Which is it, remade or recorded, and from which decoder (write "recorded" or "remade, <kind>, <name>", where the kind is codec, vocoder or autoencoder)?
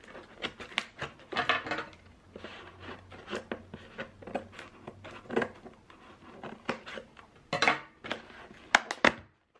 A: recorded